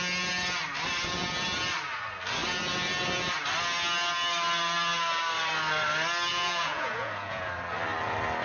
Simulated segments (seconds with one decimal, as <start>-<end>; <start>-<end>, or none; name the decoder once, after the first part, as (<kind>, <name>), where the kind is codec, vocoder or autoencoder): 6.3-7.5 (vocoder, Vocos)